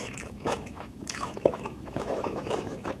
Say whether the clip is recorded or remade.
remade